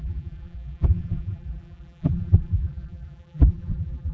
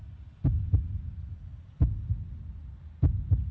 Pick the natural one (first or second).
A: second